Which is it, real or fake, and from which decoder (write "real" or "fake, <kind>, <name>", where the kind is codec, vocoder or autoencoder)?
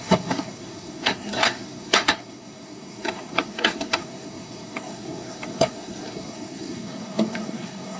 fake, codec, SNAC